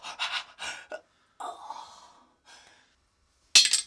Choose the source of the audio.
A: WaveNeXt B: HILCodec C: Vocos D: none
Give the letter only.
D